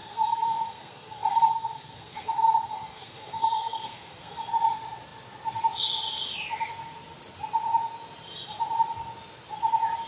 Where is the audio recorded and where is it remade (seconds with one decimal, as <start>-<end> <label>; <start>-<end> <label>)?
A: 0.0-4.5 remade; 4.5-10.1 recorded